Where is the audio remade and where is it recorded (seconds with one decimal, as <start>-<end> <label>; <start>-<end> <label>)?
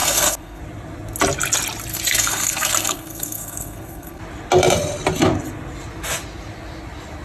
0.0-0.6 remade; 0.6-1.9 recorded; 1.9-4.2 remade; 4.2-7.2 recorded